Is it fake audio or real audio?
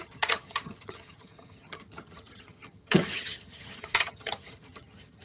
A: fake